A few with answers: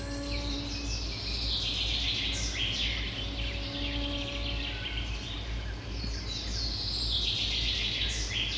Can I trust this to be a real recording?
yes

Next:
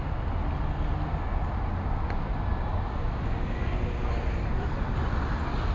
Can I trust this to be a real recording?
yes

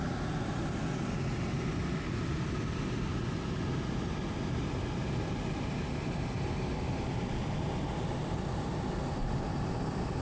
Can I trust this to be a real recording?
yes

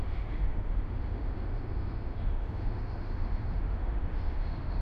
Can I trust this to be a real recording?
no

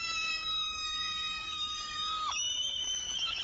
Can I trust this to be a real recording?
no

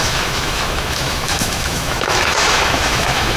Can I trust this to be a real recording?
no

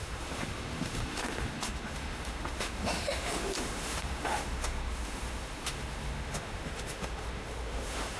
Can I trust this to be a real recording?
no